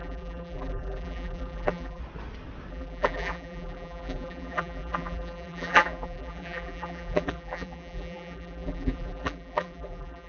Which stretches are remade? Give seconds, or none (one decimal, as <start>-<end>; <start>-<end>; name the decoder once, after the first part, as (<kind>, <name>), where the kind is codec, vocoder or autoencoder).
0.0-2.0 (vocoder, BigVGAN v2); 2.7-10.3